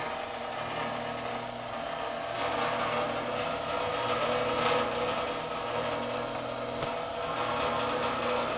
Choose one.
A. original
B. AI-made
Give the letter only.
A